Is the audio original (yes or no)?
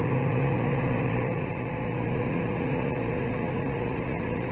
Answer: no